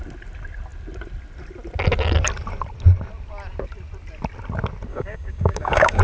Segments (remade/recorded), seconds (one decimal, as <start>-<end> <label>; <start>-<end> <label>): 0.0-4.9 recorded; 4.9-6.0 remade